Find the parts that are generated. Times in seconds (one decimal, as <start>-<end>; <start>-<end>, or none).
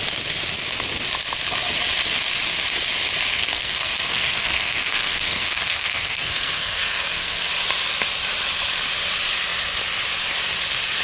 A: 3.4-7.5